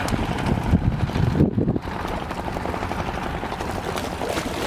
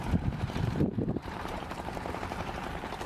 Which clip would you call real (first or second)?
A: first